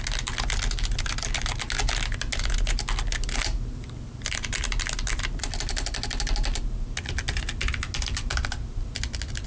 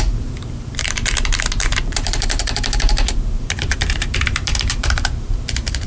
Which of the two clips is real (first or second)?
first